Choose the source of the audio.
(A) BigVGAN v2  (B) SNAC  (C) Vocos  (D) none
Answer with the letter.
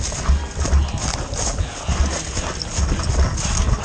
D